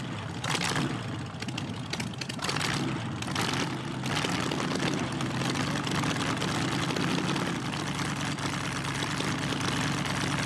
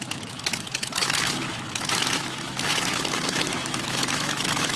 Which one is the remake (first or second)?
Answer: second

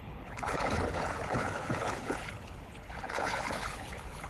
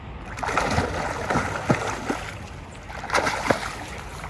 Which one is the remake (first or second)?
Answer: first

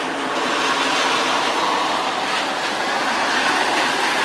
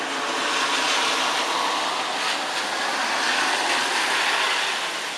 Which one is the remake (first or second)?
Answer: first